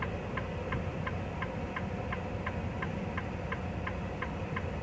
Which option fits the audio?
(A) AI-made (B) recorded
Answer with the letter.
B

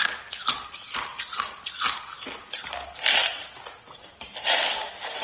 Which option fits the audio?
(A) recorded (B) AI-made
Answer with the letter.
A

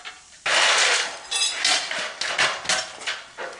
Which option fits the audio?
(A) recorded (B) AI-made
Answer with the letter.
A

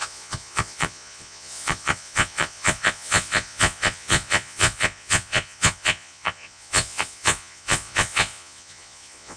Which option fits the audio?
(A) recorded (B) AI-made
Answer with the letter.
B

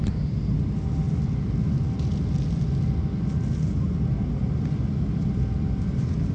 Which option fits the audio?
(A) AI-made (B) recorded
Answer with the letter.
B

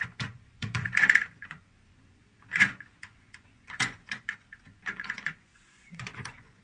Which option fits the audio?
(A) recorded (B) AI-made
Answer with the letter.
B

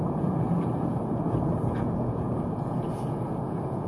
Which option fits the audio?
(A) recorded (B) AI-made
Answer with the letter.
B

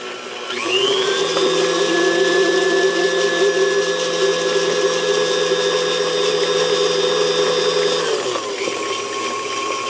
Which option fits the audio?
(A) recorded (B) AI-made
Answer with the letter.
A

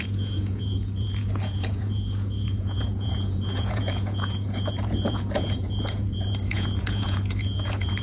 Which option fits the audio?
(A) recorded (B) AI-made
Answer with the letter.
B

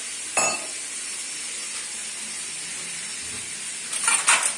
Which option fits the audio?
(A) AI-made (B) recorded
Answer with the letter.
B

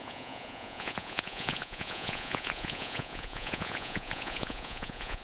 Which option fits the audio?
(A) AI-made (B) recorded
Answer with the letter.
A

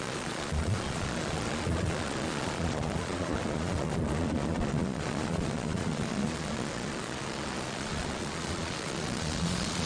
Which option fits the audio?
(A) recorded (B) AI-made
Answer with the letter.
B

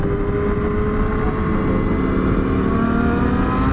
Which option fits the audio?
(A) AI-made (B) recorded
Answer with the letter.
B